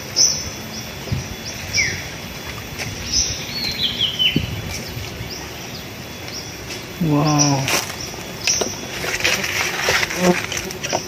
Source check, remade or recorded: recorded